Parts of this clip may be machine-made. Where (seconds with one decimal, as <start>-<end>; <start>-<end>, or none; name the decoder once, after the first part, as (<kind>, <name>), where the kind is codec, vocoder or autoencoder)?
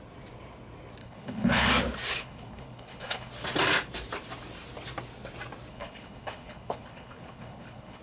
1.0-1.7 (codec, HILCodec); 2.2-3.3; 5.7-8.0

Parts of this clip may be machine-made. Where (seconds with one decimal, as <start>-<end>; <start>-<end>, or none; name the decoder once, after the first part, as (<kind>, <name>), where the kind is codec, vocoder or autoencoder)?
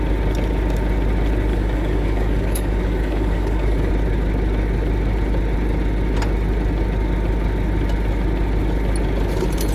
1.5-3.9 (codec, DAC)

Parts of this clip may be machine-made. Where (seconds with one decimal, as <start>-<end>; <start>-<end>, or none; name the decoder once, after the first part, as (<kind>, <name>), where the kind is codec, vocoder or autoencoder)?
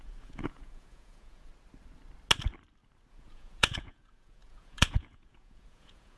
0.0-1.5 (vocoder, Vocos); 3.1-6.2